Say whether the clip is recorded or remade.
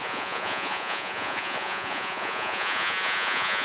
remade